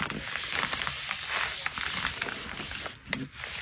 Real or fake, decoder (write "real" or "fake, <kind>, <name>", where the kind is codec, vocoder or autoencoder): real